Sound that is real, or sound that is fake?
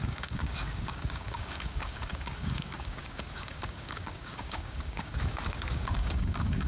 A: fake